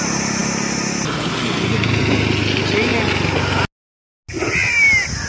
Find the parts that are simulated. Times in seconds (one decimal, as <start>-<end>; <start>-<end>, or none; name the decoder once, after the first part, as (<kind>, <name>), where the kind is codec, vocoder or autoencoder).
none